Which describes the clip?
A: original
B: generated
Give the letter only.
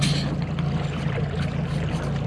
A